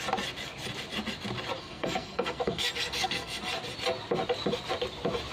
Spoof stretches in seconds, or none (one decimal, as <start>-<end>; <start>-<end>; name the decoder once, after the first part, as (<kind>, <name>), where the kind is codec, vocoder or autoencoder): 1.6-3.4 (codec, SNAC)